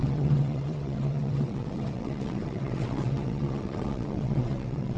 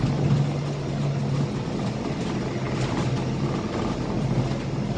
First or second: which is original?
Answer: second